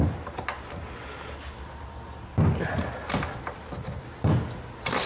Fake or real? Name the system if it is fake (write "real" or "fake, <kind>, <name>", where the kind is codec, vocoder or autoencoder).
real